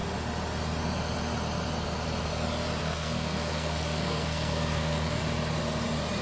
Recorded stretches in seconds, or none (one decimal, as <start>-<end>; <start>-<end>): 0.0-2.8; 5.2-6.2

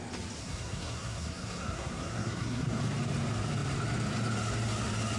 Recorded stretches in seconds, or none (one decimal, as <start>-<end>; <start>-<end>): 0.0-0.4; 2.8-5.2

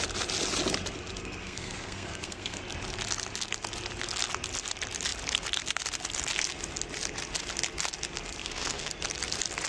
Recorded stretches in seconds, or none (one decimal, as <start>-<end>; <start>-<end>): 0.0-1.2; 2.6-8.4; 8.9-9.7